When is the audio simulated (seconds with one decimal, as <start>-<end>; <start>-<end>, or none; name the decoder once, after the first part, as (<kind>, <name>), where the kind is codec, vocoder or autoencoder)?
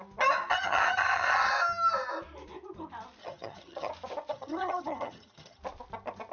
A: 0.5-1.5 (vocoder, HiFi-GAN); 3.2-3.9; 4.3-5.6